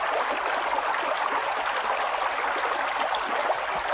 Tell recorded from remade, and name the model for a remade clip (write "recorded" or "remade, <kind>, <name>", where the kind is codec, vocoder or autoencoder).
recorded